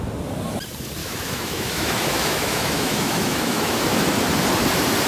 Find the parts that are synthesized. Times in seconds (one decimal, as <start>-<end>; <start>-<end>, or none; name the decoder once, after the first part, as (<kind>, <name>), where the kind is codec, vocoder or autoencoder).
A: 1.0-4.1 (autoencoder, DAC-VAE)